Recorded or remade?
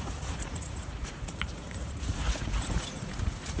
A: remade